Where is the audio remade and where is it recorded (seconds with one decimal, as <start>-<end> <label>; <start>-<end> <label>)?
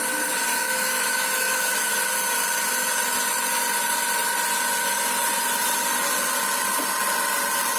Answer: 0.0-0.5 recorded; 0.5-1.9 remade; 1.9-7.8 recorded